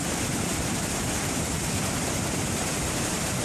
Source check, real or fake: fake